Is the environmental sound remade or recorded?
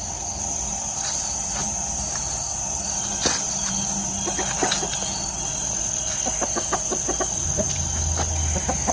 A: recorded